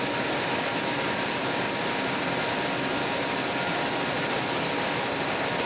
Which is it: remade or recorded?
recorded